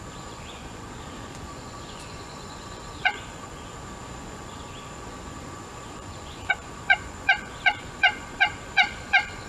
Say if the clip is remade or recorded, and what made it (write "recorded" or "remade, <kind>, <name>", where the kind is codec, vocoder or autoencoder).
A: remade, vocoder, Vocos